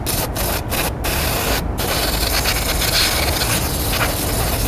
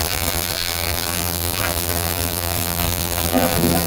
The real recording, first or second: first